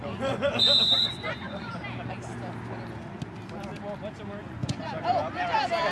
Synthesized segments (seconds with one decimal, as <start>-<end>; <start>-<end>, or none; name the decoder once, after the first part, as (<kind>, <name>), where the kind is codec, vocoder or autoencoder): 0.0-1.7 (vocoder, Vocos); 4.4-4.9